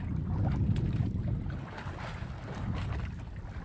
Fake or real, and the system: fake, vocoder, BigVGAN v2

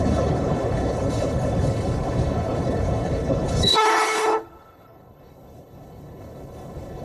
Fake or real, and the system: fake, codec, HILCodec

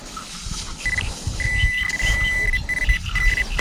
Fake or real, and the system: fake, vocoder, BigVGAN v2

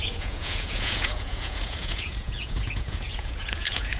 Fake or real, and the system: fake, vocoder, Vocos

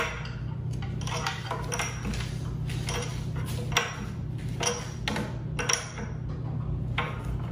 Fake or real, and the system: real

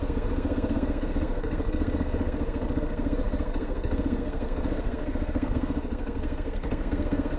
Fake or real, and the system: fake, codec, SNAC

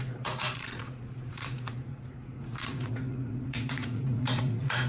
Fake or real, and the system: fake, vocoder, Vocos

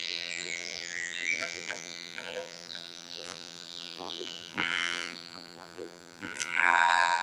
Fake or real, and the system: fake, vocoder, BigVGAN v2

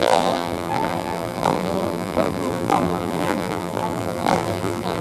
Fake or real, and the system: fake, vocoder, BigVGAN v2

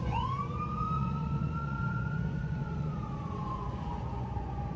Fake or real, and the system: fake, vocoder, Vocos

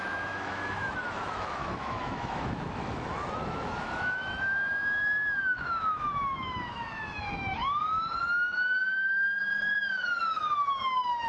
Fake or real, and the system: fake, autoencoder, DAC-VAE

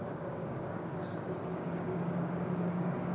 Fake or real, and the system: fake, codec, DAC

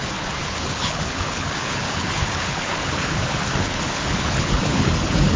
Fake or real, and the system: fake, codec, HILCodec